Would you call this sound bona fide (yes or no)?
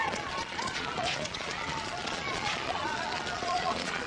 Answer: no